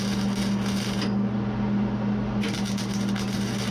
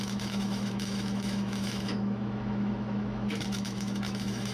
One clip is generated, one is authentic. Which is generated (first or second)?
second